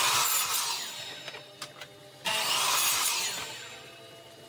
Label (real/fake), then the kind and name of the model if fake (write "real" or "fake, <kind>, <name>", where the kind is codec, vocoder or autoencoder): real